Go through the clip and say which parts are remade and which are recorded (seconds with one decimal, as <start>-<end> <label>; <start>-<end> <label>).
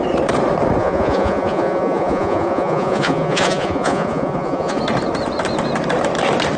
0.0-0.8 recorded; 0.8-4.8 remade; 4.8-6.6 recorded